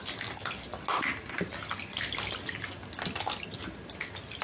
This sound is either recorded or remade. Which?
recorded